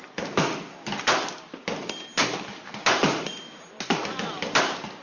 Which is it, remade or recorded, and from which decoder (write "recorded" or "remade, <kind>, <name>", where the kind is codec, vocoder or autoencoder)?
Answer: recorded